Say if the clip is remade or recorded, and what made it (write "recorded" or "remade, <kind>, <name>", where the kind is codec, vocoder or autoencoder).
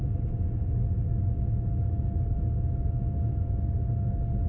recorded